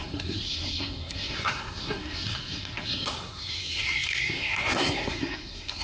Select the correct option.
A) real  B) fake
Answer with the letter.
B